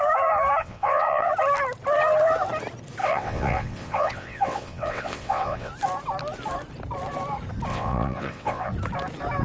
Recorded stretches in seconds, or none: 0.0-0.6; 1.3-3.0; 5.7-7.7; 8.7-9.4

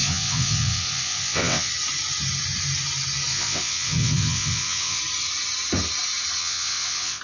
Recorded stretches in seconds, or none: 1.7-3.3; 5.0-6.4

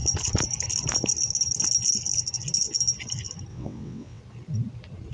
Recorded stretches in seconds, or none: 0.0-3.5; 4.2-5.1